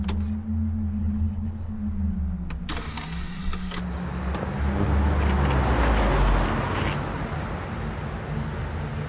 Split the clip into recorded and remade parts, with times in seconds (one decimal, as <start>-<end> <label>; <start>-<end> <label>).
0.0-1.0 recorded; 1.0-1.7 remade; 1.7-9.1 recorded